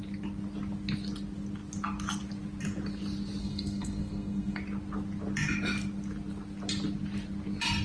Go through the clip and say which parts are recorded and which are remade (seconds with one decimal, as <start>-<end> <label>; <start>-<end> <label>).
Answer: 0.0-3.4 recorded; 3.4-4.6 remade; 4.6-7.8 recorded